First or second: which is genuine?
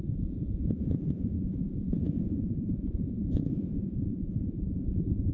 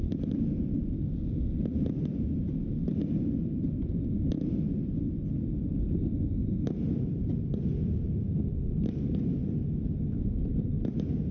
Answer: second